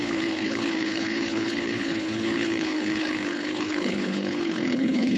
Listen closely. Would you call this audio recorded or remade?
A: remade